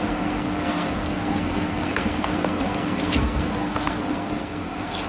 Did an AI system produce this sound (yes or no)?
yes